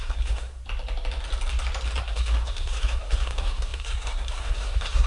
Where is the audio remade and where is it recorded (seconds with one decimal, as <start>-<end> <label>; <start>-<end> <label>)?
0.0-0.6 remade; 0.6-2.0 recorded; 2.0-5.1 remade

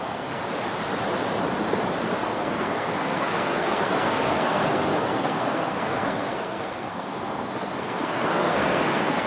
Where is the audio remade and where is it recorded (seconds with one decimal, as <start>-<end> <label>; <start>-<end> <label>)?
0.0-0.4 remade; 0.4-2.2 recorded; 2.2-9.3 remade

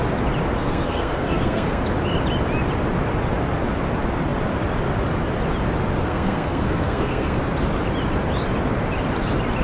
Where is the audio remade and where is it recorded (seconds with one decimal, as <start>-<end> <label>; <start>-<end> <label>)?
0.0-0.6 recorded; 0.6-1.8 remade; 1.8-6.0 recorded; 6.0-7.4 remade; 7.4-9.6 recorded

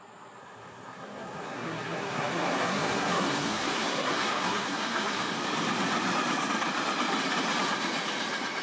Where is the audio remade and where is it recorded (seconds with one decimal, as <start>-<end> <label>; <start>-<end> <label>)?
0.0-0.4 recorded; 0.4-5.2 remade; 5.2-8.6 recorded

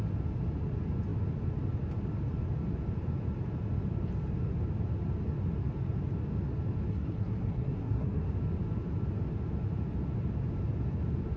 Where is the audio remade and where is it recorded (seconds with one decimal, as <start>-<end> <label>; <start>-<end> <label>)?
0.0-6.9 recorded; 6.9-8.3 remade; 8.3-11.4 recorded

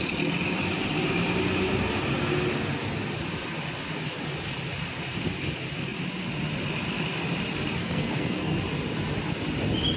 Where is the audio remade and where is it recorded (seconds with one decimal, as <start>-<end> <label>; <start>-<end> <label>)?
0.0-7.8 recorded; 7.8-8.6 remade; 8.6-10.0 recorded

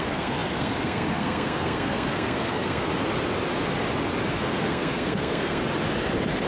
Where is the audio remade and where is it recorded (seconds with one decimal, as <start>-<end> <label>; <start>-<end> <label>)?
0.0-2.9 remade; 2.9-4.3 recorded; 4.3-5.6 remade; 5.6-6.5 recorded

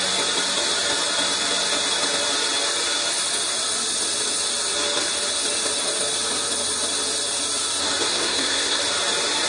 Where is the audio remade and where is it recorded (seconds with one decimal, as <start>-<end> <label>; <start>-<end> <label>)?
0.0-8.1 recorded; 8.1-8.8 remade; 8.8-9.5 recorded